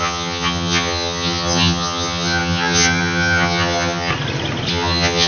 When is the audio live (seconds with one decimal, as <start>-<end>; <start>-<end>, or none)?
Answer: 4.1-4.7